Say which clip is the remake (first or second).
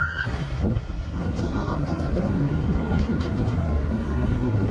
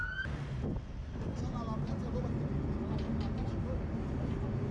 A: first